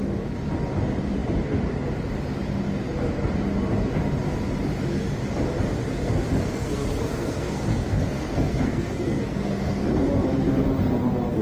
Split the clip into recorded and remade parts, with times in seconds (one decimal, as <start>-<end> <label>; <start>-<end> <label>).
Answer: 0.0-5.9 recorded; 5.9-9.9 remade; 9.9-11.4 recorded